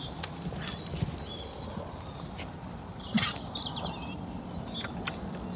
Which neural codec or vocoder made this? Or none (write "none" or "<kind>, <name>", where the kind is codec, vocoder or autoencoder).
none